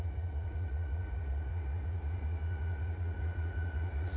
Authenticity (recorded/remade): remade